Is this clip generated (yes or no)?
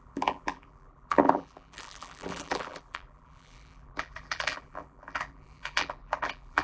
yes